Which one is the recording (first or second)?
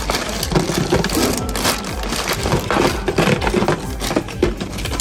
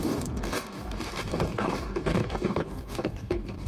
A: first